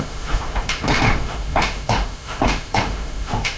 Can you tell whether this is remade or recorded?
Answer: remade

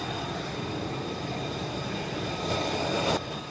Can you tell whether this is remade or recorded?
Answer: recorded